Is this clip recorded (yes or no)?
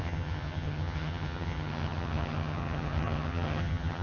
no